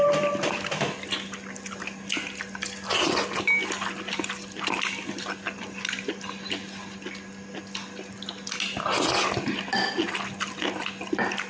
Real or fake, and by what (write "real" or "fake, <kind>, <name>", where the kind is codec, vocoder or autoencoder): real